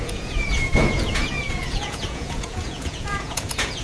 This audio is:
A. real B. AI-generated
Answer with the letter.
B